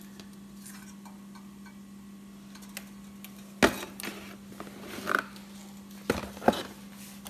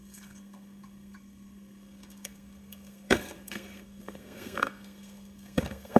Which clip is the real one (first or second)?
first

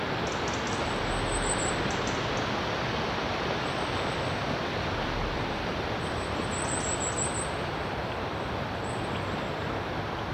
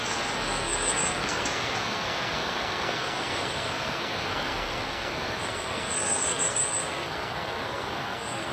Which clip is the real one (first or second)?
first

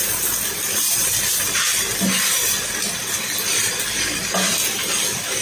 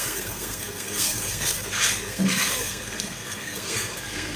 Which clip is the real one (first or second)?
first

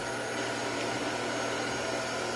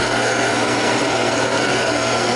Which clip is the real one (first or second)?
first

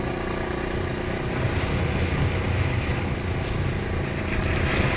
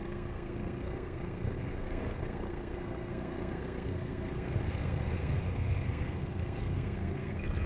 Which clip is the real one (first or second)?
first